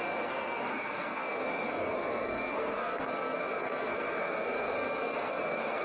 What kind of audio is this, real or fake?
fake